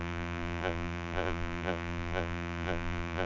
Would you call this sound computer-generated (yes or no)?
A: yes